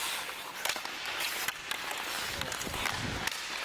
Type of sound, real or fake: real